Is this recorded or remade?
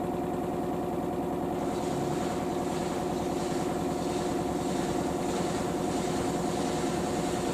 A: recorded